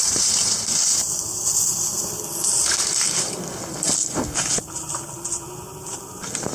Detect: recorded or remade recorded